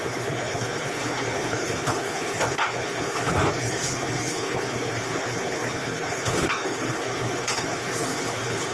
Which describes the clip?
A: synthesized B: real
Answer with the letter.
A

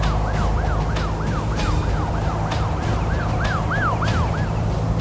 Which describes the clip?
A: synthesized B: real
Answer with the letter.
B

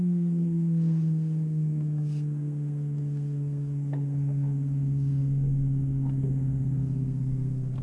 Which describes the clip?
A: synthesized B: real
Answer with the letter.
A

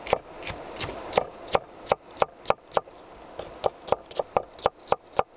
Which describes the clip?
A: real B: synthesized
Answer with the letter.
A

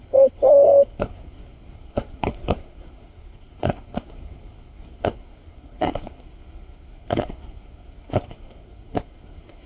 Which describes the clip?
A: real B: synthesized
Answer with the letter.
B